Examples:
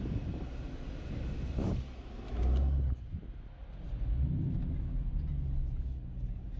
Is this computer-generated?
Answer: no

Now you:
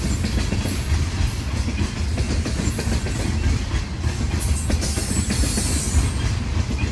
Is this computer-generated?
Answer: no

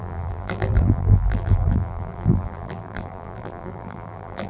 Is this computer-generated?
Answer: yes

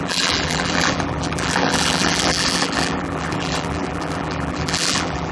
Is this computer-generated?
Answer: yes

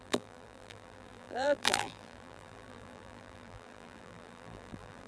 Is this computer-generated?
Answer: yes